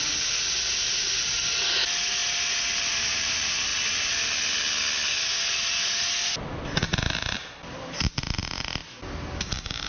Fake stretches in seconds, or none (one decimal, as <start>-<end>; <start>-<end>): none